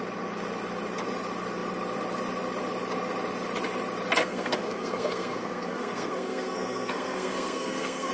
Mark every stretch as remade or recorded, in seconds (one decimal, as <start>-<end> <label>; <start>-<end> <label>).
0.0-4.2 recorded; 4.2-8.1 remade